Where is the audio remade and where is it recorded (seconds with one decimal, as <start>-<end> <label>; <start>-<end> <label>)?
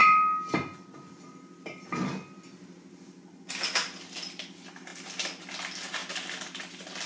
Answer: 0.0-7.1 recorded